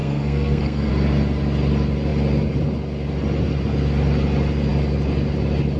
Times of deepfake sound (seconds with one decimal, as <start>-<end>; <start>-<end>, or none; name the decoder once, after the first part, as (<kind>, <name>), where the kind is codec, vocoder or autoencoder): 0.0-0.9 (codec, SNAC)